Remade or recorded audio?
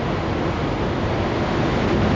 recorded